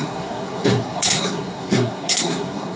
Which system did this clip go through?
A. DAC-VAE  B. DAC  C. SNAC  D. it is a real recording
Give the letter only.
C